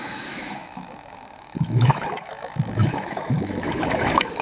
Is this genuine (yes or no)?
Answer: no